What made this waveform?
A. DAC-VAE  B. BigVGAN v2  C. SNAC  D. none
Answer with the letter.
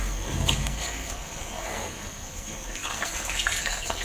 C